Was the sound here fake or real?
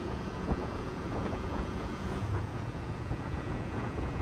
fake